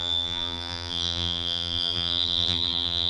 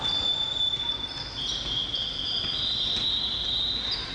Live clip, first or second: second